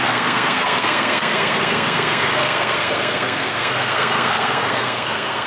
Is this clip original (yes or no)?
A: no